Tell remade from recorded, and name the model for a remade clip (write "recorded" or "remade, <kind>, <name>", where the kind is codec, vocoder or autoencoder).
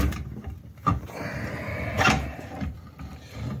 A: recorded